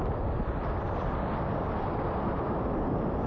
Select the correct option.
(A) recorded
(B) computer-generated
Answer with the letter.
A